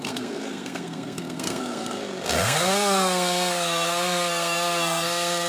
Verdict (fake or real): fake